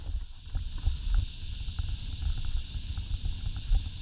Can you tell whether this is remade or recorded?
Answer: recorded